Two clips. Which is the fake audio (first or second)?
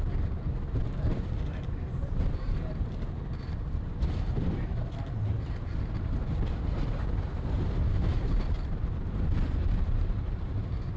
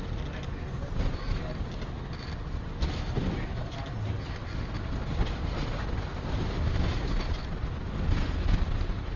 first